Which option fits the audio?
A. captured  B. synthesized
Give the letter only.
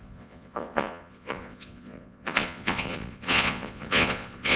B